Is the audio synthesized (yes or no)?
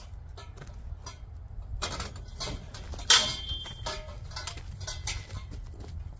no